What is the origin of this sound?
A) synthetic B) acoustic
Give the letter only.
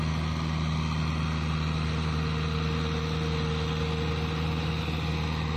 B